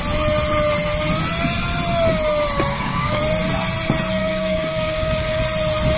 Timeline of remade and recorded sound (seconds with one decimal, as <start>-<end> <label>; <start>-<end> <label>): 0.0-2.7 recorded; 2.7-3.2 remade; 3.2-4.2 recorded; 4.2-5.4 remade; 5.4-6.0 recorded